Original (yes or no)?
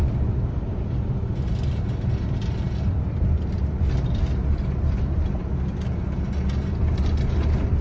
yes